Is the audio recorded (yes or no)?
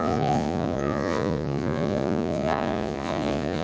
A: no